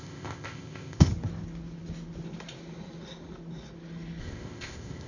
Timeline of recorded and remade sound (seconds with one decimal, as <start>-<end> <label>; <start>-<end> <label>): 0.0-1.1 remade; 1.1-4.2 recorded; 4.2-5.1 remade